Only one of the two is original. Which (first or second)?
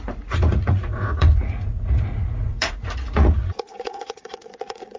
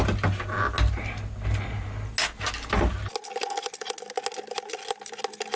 second